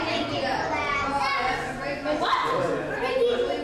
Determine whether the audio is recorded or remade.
recorded